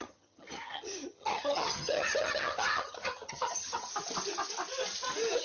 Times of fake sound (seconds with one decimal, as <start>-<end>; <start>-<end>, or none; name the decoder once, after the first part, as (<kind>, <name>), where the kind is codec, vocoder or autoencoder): 0.0-3.9 (vocoder, HiFi-GAN)

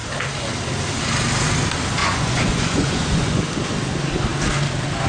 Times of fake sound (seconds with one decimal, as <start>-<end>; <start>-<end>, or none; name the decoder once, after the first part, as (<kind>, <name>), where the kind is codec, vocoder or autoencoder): 2.0-3.4 (vocoder, Vocos)

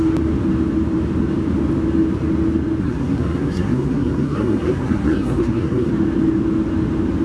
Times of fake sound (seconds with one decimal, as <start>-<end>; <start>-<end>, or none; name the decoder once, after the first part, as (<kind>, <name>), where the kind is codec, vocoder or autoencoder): 2.8-5.9 (codec, SNAC)

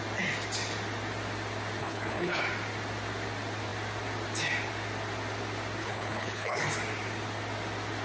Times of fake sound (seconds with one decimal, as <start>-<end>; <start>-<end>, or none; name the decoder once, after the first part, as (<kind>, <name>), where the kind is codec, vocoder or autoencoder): 1.8-2.4 (codec, HILCodec); 5.8-6.7

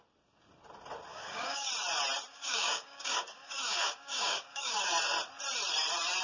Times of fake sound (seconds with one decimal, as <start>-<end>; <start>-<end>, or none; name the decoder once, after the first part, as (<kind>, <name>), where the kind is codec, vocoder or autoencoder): 1.1-1.7 (codec, DAC); 2.3-4.9